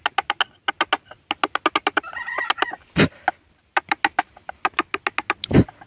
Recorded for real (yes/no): yes